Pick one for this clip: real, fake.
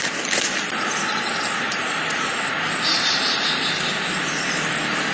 real